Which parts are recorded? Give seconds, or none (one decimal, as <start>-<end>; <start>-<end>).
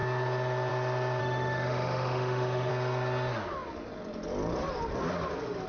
0.0-1.2; 2.7-5.7